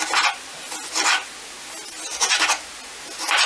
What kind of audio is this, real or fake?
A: real